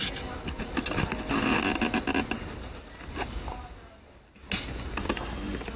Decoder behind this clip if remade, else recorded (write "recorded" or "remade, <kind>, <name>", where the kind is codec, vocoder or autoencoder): recorded